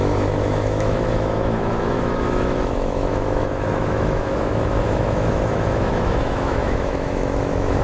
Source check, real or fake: fake